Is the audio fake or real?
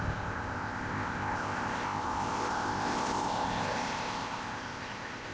fake